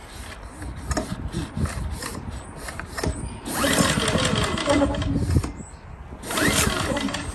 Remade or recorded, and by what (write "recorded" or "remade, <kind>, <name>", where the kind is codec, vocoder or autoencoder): recorded